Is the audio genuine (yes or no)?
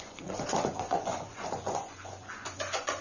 no